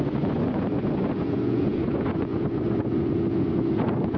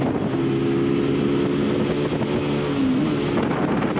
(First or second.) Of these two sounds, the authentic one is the second